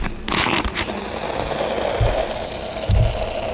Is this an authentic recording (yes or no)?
yes